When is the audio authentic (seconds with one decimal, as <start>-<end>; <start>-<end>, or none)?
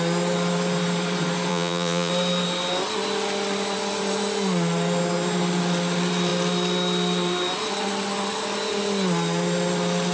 0.0-1.5; 2.1-10.1